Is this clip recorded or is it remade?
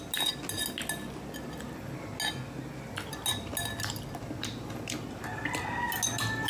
recorded